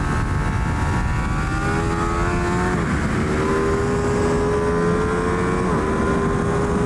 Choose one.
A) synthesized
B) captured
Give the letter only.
B